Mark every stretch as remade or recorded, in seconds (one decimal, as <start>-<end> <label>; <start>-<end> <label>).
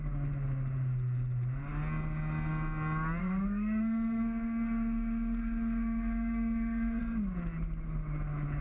0.0-3.2 recorded; 3.2-7.0 remade; 7.0-8.6 recorded